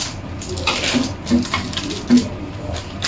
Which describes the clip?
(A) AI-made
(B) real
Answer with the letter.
B